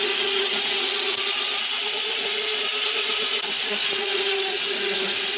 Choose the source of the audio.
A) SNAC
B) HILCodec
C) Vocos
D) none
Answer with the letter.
C